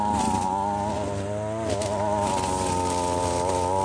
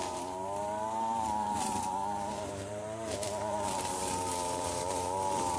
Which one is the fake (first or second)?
second